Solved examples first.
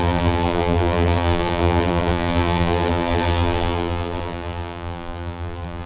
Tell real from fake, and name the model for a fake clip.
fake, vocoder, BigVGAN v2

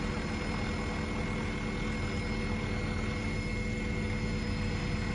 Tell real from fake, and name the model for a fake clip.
real